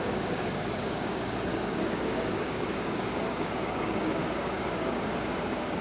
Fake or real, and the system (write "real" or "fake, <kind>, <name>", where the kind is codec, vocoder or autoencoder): fake, codec, DAC